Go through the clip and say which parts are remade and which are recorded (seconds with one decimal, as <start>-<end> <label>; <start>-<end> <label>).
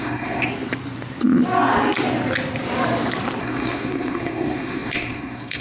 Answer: 0.0-0.5 remade; 0.5-3.4 recorded; 3.4-5.6 remade